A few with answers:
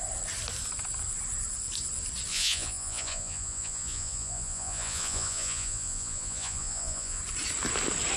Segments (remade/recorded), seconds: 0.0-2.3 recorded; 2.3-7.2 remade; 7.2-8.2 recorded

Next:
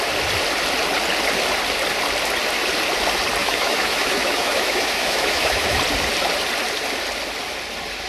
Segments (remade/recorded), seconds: 0.0-3.4 recorded; 3.4-5.8 remade; 5.8-8.1 recorded

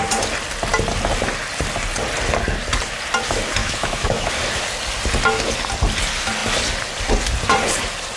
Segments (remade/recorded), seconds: 0.0-3.6 recorded; 3.6-4.3 remade; 4.3-8.2 recorded

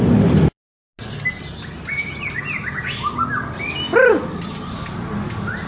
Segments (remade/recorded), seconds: 0.0-5.7 recorded

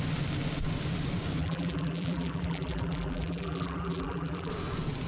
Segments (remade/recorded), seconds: 0.0-1.4 recorded; 1.4-4.5 remade; 4.5-5.1 recorded

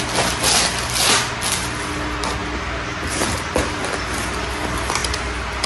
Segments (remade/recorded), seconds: 0.0-5.7 recorded

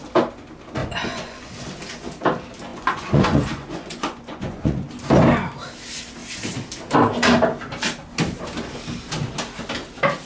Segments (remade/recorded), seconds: 0.0-0.8 recorded; 0.8-1.5 remade; 1.5-2.7 recorded; 2.7-4.9 remade; 4.9-10.3 recorded